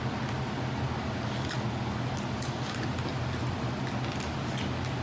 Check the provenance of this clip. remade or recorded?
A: recorded